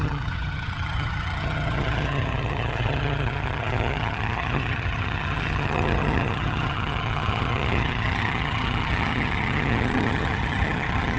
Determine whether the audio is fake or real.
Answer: fake